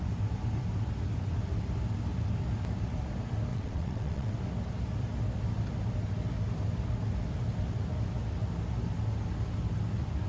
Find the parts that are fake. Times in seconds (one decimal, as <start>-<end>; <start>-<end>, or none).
3.5-4.3